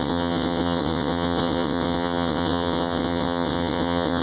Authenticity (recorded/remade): remade